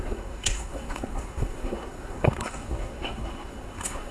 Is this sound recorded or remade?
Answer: remade